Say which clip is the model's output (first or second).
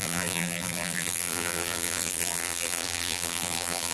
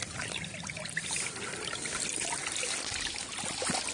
first